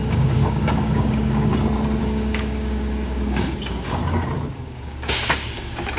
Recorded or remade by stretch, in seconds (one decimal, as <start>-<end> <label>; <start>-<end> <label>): 0.0-1.5 remade; 1.5-2.0 recorded; 2.0-4.0 remade; 4.0-4.5 recorded; 4.5-6.0 remade